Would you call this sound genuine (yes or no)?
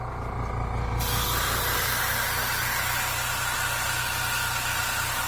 yes